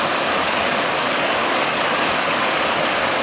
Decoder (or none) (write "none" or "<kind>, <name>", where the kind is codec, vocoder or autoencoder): codec, DAC